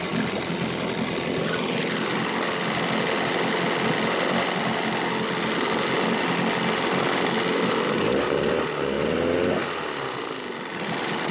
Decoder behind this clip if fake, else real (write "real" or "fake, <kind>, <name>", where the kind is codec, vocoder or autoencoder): real